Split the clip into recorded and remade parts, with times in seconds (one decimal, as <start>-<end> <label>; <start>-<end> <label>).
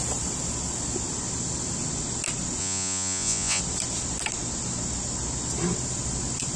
0.0-2.6 recorded; 2.6-3.6 remade; 3.6-6.6 recorded